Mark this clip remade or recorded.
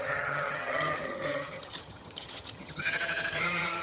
remade